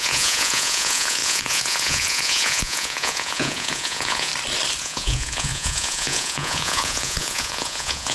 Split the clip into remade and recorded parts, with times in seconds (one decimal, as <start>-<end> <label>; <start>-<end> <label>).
0.0-4.3 remade; 4.3-4.8 recorded; 4.8-8.1 remade